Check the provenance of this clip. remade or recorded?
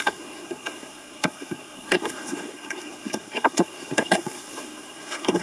remade